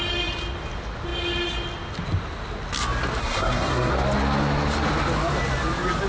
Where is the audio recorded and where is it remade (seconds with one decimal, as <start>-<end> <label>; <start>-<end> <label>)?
0.0-3.2 recorded; 3.2-3.9 remade; 3.9-6.1 recorded